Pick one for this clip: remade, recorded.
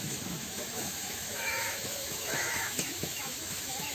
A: remade